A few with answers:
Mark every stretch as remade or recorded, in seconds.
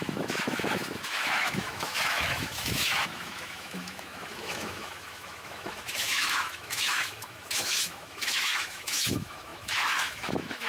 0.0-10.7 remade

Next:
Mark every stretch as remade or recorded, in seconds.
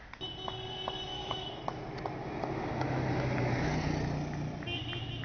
0.0-1.1 recorded; 1.1-1.6 remade; 1.6-2.2 recorded; 2.2-3.6 remade; 3.6-5.2 recorded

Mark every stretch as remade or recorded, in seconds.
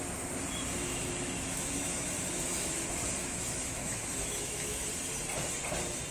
0.0-0.8 recorded; 0.8-2.8 remade; 2.8-3.2 recorded; 3.2-4.9 remade; 4.9-6.1 recorded